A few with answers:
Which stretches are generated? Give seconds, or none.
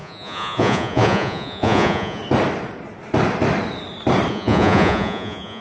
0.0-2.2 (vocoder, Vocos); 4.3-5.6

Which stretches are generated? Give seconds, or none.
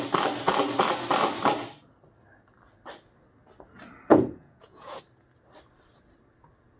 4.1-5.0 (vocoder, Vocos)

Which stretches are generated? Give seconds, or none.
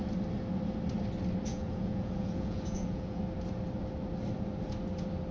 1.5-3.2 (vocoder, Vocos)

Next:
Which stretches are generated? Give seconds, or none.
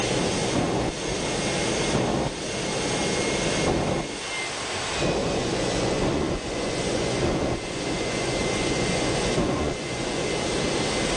0.4-0.9 (vocoder, Vocos); 5.2-10.2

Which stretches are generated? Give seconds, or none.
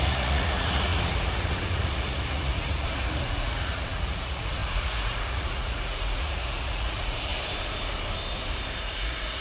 0.0-7.3 (vocoder, Vocos); 8.8-9.4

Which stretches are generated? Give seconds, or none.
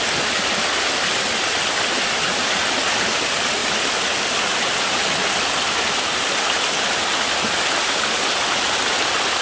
none